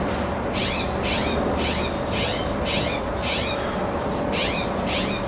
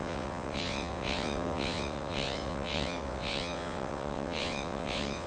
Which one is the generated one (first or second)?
second